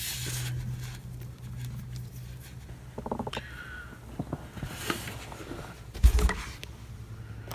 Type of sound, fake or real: real